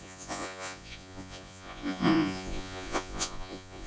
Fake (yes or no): yes